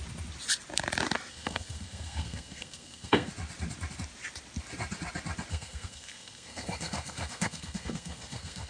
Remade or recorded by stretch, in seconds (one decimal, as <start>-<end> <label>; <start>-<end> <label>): 0.0-1.3 recorded; 1.3-3.3 remade; 3.3-5.5 recorded; 5.5-8.7 remade